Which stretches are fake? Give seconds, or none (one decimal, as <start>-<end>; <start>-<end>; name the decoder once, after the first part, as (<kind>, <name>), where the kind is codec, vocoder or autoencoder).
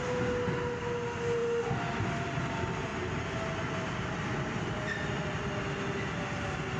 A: none